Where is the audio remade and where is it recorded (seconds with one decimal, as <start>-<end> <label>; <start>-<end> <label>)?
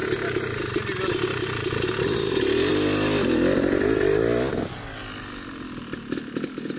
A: 0.0-6.8 recorded